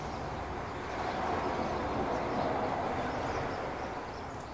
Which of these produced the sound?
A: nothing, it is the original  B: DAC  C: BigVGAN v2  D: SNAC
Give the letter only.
A